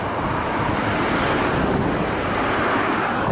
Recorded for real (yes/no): no